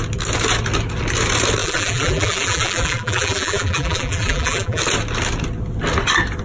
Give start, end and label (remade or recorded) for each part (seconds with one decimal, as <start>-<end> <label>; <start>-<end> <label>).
0.0-1.6 recorded; 1.6-4.8 remade; 4.8-6.4 recorded